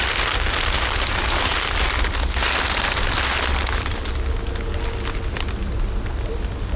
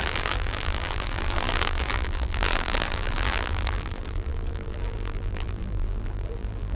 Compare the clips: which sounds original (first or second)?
first